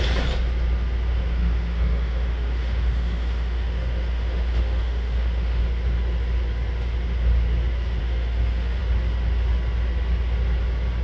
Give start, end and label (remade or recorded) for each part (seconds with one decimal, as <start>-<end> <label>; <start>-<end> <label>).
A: 0.0-1.1 recorded; 1.1-5.6 remade; 5.6-8.0 recorded; 8.0-8.8 remade; 8.8-11.0 recorded